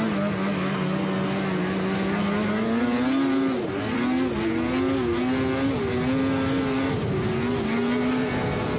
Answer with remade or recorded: recorded